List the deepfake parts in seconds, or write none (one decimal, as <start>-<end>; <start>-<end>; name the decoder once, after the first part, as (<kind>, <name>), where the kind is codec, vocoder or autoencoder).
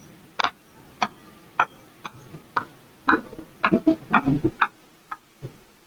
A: none